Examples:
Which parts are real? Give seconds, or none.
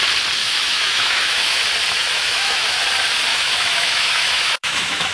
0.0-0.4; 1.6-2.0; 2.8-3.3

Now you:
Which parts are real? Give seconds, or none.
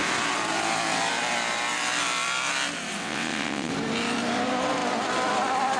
0.0-3.0; 3.7-5.8